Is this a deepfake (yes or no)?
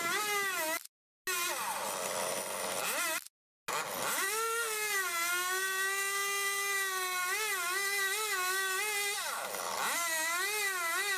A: no